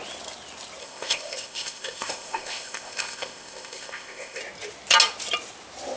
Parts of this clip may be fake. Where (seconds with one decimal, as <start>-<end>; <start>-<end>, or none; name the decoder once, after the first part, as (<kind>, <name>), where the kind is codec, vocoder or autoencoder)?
0.8-4.4 (codec, ZipCodec)